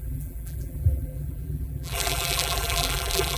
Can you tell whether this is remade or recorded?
remade